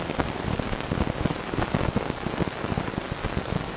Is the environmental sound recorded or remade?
remade